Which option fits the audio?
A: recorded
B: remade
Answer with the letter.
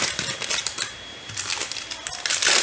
B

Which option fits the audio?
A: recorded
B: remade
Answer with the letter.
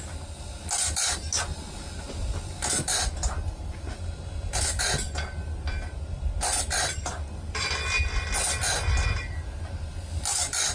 A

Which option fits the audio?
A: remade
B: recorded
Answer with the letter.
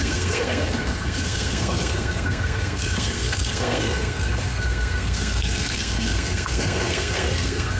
A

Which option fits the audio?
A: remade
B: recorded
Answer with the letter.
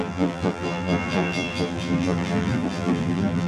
A